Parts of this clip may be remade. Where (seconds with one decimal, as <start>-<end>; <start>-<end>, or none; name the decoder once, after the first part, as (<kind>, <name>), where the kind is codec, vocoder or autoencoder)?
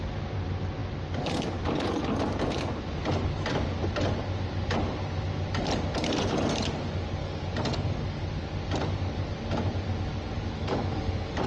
7.2-8.3 (codec, DAC); 10.6-11.5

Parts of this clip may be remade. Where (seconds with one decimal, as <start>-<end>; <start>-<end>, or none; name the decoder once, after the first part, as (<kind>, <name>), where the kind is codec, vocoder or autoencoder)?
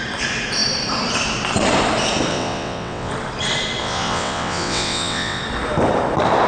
2.3-3.1 (vocoder, WaveNeXt); 3.8-5.4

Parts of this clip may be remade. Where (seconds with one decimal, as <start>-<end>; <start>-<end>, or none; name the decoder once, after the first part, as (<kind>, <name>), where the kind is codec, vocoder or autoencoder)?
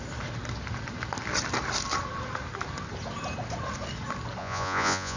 4.4-5.2 (vocoder, Vocos)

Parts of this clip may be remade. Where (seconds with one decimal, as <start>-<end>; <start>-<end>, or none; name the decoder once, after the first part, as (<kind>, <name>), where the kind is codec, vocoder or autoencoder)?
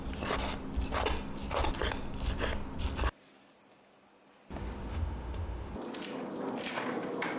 4.9-5.7 (autoencoder, DAC-VAE)